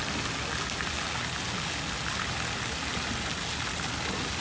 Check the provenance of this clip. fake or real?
real